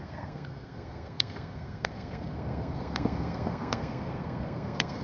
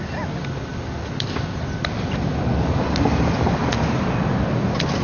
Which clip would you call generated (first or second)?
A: first